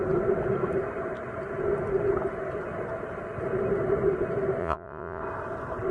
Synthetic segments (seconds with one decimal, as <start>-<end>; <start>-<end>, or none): 4.6-5.2